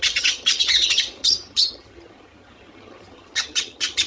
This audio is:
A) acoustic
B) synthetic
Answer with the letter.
B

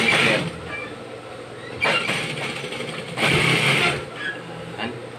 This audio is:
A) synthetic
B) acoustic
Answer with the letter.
B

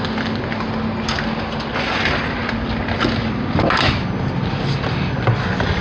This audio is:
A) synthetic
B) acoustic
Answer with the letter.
B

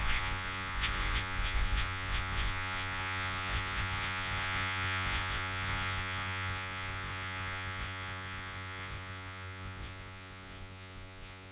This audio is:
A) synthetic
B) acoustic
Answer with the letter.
A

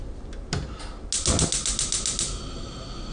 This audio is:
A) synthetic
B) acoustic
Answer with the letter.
B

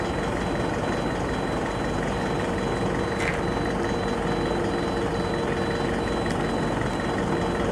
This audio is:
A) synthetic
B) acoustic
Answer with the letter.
B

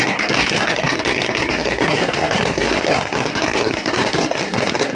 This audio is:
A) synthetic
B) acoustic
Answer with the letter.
A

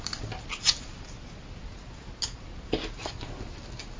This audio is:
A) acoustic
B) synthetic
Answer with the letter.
A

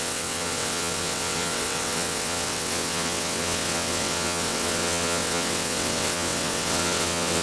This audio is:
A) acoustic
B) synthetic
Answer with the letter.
B